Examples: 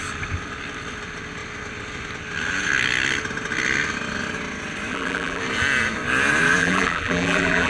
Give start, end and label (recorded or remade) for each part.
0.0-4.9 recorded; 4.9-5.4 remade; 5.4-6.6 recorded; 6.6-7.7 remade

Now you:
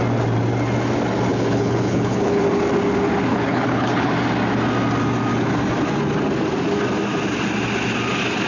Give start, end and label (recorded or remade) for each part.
0.0-1.3 recorded; 1.3-2.4 remade; 2.4-3.3 recorded; 3.3-4.1 remade; 4.1-8.5 recorded

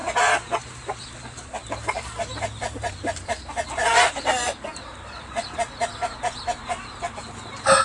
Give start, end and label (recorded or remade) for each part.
0.0-0.7 recorded; 0.7-7.8 remade